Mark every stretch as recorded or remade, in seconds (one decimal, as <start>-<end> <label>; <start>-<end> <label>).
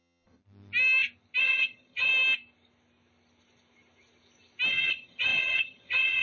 0.0-0.4 remade; 0.4-1.4 recorded; 1.4-2.1 remade; 2.1-4.7 recorded; 4.7-6.2 remade